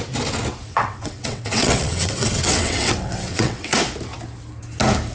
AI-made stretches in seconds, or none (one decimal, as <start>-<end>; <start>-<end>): 0.7-3.8